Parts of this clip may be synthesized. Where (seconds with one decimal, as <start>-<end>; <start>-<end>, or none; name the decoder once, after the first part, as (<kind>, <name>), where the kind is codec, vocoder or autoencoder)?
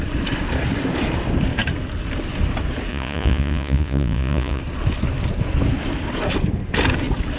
2.9-4.6 (vocoder, Vocos)